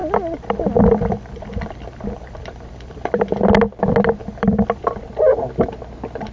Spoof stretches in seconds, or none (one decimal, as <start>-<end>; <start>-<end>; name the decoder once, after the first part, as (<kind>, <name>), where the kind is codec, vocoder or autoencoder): 0.0-3.4 (vocoder, BigVGAN v2); 4.2-4.8

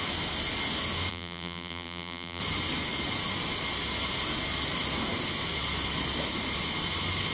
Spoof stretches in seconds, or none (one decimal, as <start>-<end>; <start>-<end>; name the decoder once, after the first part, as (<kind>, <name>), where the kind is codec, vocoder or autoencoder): 1.1-2.4 (vocoder, BigVGAN v2)

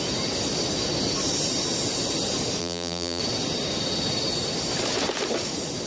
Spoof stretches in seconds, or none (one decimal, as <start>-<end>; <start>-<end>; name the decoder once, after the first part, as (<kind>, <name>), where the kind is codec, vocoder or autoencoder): 2.6-3.2 (vocoder, BigVGAN v2)